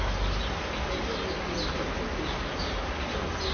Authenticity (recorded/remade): recorded